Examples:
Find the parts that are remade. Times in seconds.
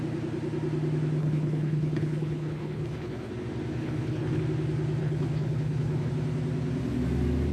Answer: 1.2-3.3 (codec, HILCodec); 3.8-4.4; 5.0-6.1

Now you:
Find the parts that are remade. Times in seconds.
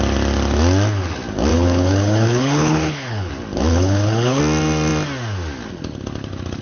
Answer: 1.5-3.3 (codec, HILCodec); 3.7-4.4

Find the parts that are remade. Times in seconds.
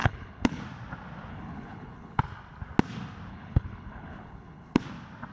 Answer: 0.0-0.6 (codec, HILCodec); 1.3-2.2; 3.3-4.8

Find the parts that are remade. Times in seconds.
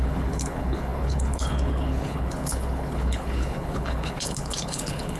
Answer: 0.0-5.2 (codec, HILCodec)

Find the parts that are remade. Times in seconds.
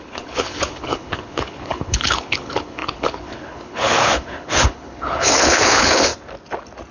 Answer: 0.0-6.1 (codec, HILCodec)